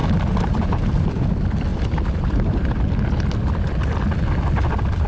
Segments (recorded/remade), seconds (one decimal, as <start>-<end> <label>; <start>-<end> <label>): 0.0-1.1 remade; 1.1-1.7 recorded; 1.7-2.9 remade; 2.9-5.1 recorded